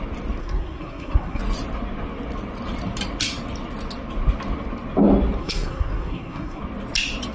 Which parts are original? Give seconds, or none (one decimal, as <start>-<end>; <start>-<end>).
0.0-0.4; 1.4-5.4; 6.6-7.3